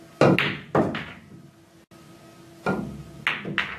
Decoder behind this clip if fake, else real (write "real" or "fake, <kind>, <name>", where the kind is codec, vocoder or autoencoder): real